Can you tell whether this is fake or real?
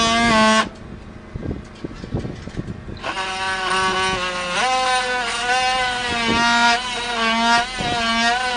real